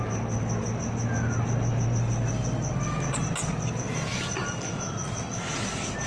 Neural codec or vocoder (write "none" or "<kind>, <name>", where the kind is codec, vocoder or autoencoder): none